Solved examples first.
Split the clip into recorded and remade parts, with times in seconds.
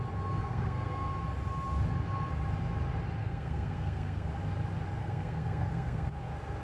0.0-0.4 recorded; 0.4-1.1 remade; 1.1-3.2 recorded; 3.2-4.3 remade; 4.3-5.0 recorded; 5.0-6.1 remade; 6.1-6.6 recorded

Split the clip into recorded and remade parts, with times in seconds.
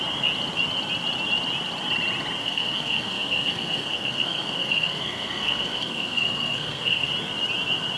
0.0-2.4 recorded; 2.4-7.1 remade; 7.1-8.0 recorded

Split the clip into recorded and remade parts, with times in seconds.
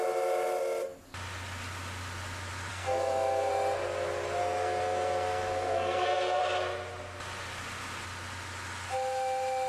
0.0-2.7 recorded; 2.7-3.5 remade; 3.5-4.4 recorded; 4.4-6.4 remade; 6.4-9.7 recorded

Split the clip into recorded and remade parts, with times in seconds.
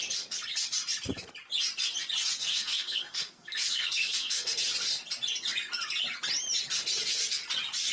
0.0-2.4 recorded; 2.4-4.6 remade; 4.6-7.9 recorded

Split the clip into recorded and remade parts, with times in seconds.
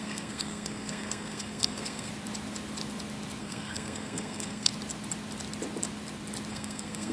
0.0-2.1 remade; 2.1-3.4 recorded; 3.4-4.7 remade; 4.7-6.5 recorded; 6.5-7.1 remade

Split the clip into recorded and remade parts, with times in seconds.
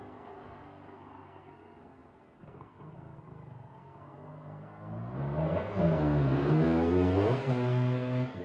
0.0-8.4 remade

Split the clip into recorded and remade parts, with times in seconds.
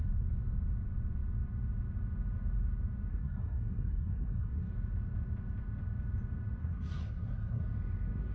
0.0-3.1 recorded; 3.1-4.7 remade; 4.7-6.6 recorded; 6.6-7.6 remade; 7.6-8.3 recorded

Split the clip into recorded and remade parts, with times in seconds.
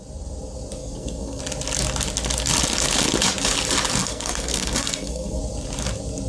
0.0-0.8 recorded; 0.8-1.4 remade; 1.4-4.0 recorded; 4.0-5.4 remade; 5.4-6.3 recorded